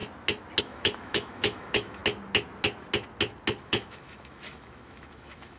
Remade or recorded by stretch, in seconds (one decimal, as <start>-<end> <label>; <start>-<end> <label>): 0.0-0.6 recorded; 0.6-2.0 remade; 2.0-3.6 recorded; 3.6-5.6 remade